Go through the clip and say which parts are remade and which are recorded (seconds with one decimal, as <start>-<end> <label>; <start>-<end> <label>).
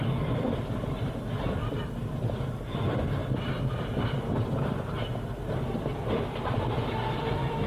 0.0-3.2 remade; 3.2-3.7 recorded; 3.7-7.7 remade